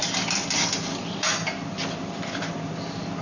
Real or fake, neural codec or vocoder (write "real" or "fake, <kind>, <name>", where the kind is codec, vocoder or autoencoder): fake, vocoder, BigVGAN v2